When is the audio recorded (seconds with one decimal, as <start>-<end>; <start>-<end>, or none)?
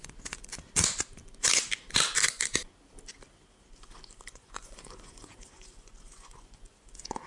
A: 0.5-4.3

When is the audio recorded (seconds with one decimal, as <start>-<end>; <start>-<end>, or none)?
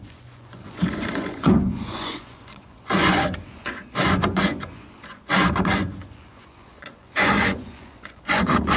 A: none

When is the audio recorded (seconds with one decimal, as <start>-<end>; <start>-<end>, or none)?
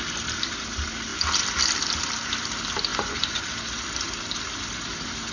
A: 0.0-2.9; 3.4-5.3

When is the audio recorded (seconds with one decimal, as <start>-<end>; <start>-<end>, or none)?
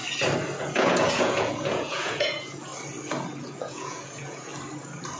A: 0.0-0.6; 2.7-3.6; 4.5-5.2